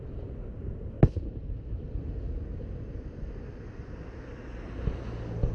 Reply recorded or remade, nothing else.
recorded